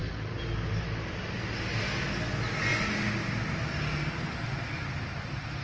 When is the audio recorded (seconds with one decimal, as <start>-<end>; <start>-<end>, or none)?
0.0-5.6